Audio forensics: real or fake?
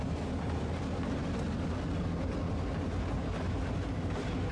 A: real